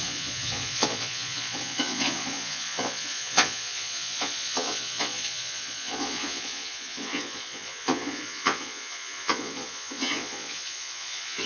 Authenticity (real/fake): fake